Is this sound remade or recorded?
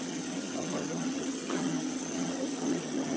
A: remade